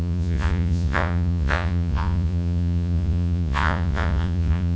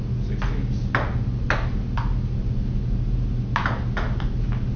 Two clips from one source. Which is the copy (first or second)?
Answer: first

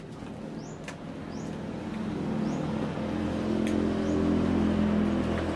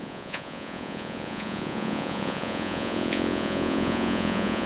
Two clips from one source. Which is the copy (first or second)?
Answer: second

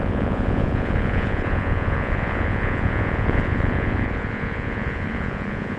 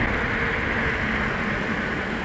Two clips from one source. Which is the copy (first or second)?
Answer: first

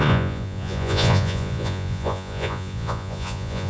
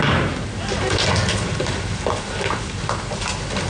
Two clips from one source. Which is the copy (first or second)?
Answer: first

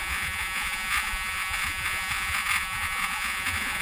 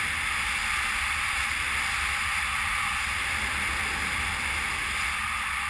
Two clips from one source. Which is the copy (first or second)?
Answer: first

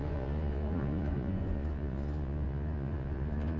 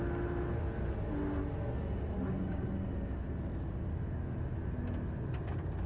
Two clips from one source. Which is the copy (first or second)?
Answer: first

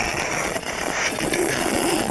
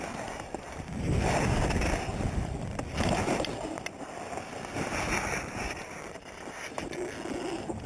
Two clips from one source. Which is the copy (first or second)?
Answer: first